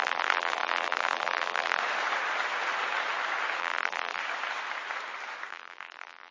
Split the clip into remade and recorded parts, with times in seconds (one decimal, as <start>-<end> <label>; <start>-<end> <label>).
0.0-1.8 remade; 1.8-3.6 recorded; 3.6-4.2 remade; 4.2-5.5 recorded; 5.5-6.3 remade